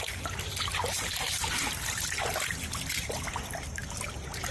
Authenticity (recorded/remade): recorded